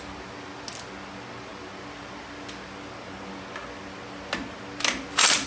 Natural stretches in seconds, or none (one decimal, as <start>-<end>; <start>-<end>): 0.0-5.5